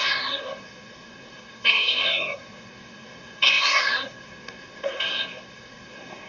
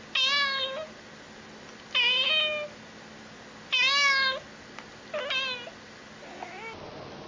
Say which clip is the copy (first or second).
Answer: first